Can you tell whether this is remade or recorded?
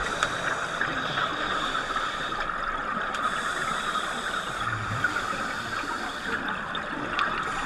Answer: recorded